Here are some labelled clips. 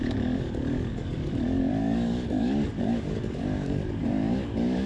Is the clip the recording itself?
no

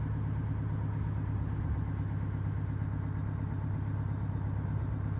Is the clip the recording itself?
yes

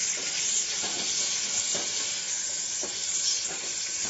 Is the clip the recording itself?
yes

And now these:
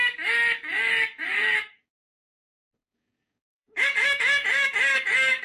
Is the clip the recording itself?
no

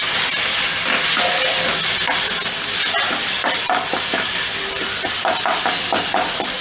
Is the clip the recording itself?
yes